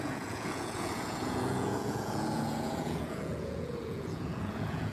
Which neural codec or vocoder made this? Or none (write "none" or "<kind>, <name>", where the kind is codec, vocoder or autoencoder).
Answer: vocoder, Vocos